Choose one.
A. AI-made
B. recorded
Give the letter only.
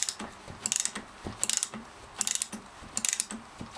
B